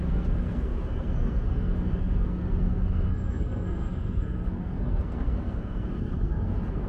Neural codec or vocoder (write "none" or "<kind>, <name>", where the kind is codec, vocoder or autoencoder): codec, SNAC